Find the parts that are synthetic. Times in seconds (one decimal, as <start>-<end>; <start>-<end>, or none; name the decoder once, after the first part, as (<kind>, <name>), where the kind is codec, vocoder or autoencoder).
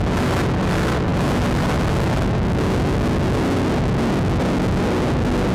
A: none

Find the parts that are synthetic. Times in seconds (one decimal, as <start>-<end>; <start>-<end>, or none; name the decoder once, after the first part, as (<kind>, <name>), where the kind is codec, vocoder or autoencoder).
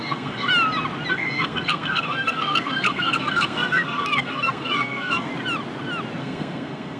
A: 0.0-0.5 (codec, SNAC); 1.1-5.3; 6.2-7.0